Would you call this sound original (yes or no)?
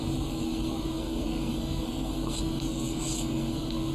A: no